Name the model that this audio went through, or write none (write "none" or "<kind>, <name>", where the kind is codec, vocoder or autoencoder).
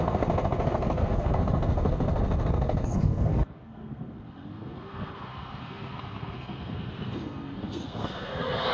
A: codec, SNAC